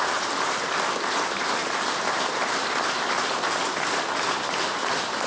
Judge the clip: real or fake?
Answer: real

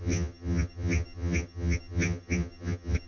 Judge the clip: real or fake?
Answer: fake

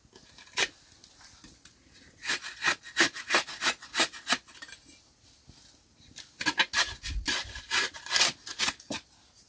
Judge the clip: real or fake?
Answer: real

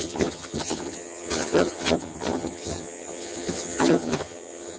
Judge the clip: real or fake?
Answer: fake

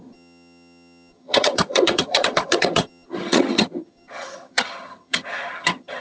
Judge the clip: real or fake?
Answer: fake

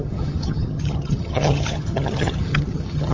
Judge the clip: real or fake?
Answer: fake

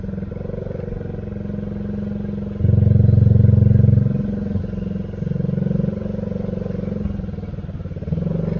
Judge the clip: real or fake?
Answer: real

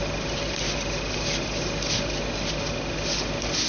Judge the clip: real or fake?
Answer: real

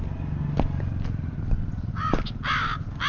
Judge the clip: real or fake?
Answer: real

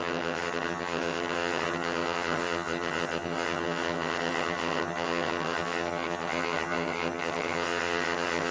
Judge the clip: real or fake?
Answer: fake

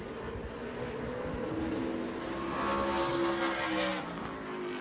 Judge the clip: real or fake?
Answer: real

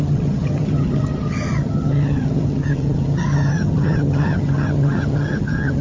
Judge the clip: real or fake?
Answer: fake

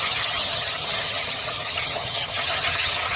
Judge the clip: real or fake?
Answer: fake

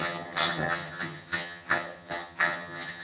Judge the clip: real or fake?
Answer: fake